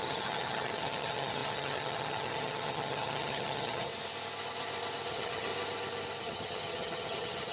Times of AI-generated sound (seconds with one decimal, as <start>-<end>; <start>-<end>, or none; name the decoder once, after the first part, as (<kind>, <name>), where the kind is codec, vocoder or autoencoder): 0.0-3.9 (vocoder, HiFi-GAN); 5.1-5.5; 6.2-7.5